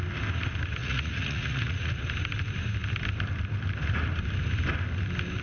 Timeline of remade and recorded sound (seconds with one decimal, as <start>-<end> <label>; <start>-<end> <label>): 0.0-0.8 recorded; 0.8-1.9 remade; 1.9-5.4 recorded